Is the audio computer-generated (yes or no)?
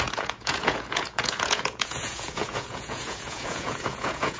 yes